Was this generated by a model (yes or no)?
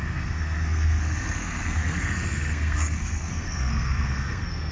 yes